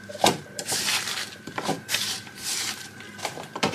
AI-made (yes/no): yes